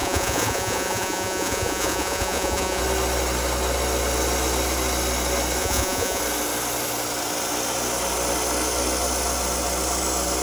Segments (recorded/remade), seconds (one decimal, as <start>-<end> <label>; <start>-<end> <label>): 0.0-2.8 remade; 2.8-5.6 recorded; 5.6-6.2 remade; 6.2-10.4 recorded